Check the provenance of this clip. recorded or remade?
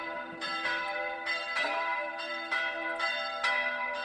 remade